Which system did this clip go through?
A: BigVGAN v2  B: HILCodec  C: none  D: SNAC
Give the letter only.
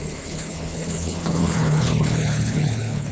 B